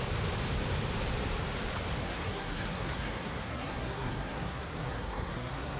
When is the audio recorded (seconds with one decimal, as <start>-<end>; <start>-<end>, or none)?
0.0-2.0